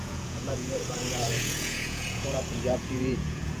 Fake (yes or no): yes